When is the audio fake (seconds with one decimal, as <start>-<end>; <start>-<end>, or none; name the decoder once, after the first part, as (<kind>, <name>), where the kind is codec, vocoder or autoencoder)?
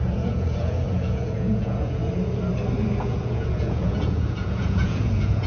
0.0-2.0 (vocoder, Vocos); 3.0-5.5